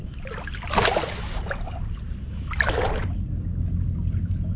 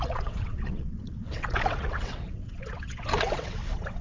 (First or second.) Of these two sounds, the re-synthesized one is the second